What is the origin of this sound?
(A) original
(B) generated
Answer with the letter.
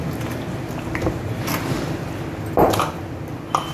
A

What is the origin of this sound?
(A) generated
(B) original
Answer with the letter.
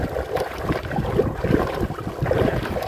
B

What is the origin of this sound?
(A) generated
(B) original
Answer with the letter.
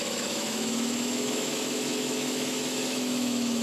A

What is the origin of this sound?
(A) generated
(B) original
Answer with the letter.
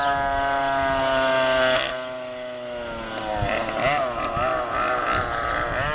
B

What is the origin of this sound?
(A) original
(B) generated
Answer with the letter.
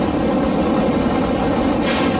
A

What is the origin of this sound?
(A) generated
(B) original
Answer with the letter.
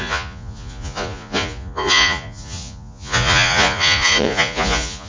A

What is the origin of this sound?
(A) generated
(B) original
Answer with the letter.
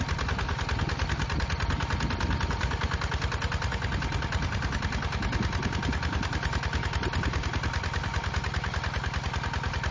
B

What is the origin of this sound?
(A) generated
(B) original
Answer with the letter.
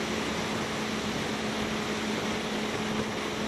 B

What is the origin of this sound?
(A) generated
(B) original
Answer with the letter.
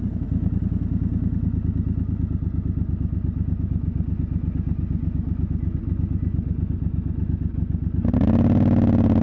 B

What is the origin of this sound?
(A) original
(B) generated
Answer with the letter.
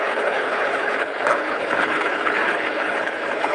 B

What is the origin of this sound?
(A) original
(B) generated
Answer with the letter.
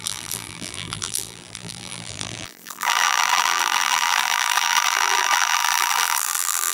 B